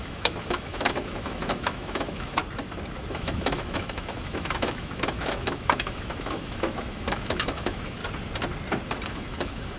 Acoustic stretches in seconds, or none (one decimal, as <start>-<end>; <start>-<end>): 2.4-3.1; 8.0-9.1